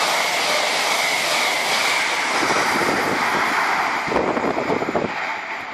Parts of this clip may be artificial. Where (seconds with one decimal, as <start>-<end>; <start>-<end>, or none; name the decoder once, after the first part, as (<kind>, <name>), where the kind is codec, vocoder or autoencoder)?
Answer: 1.8-4.8 (vocoder, BigVGAN v2)